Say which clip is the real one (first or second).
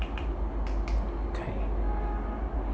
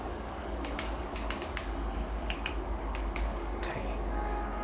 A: first